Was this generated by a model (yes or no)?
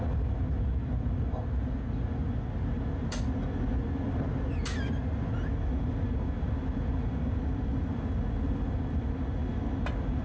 no